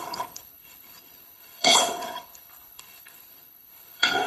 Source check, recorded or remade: remade